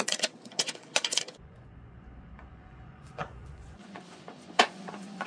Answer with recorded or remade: remade